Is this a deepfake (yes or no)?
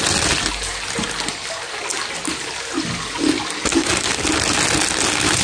no